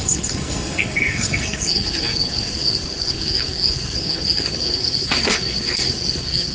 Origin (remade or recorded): remade